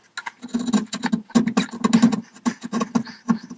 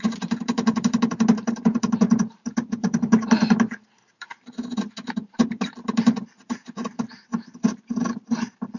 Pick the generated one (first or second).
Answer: second